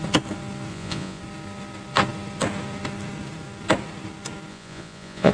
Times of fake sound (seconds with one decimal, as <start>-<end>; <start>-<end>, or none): 0.7-1.2; 4.5-5.3